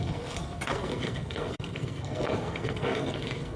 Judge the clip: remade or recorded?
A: remade